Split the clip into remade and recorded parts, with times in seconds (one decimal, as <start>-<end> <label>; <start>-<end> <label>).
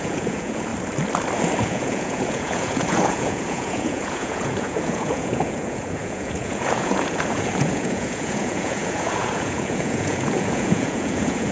0.0-0.7 remade; 0.7-1.6 recorded; 1.6-11.5 remade